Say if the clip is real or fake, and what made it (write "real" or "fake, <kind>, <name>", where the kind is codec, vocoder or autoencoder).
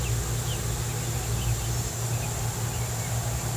real